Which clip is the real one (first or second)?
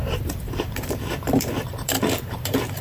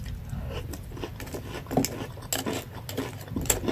second